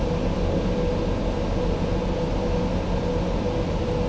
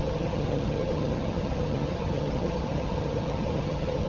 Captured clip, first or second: first